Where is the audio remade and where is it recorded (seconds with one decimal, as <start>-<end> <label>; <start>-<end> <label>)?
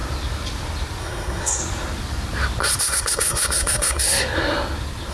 0.0-1.0 recorded; 1.0-1.6 remade; 1.6-2.8 recorded; 2.8-4.2 remade; 4.2-5.1 recorded